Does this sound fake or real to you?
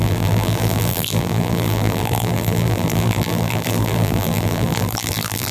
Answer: fake